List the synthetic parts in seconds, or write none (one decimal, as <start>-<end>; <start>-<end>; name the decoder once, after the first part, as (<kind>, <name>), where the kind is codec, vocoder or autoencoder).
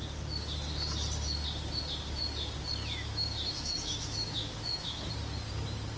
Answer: 2.8-5.1 (autoencoder, DAC-VAE)